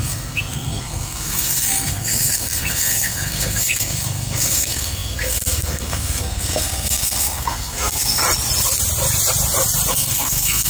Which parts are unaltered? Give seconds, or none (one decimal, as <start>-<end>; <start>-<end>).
8.2-9.9